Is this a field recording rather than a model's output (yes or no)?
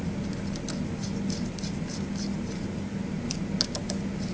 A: yes